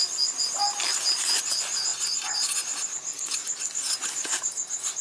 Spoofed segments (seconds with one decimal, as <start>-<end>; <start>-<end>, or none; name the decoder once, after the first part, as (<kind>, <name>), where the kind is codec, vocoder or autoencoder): none